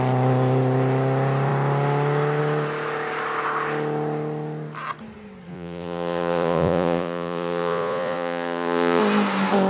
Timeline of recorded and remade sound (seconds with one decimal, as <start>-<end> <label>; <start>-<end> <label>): 0.0-5.5 recorded; 5.5-9.0 remade; 9.0-9.7 recorded